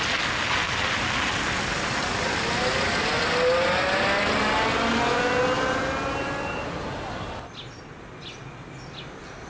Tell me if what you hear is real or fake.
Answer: real